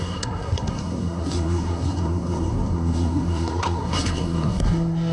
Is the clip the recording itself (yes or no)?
no